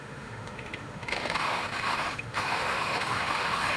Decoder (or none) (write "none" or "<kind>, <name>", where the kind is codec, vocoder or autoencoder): autoencoder, DAC-VAE